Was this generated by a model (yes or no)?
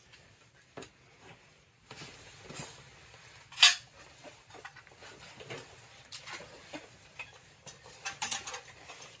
no